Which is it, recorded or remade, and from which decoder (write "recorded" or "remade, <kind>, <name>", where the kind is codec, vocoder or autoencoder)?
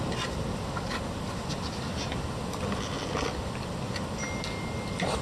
recorded